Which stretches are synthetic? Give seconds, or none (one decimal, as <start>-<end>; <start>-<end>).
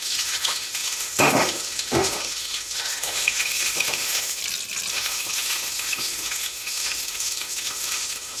0.0-4.4; 4.9-8.4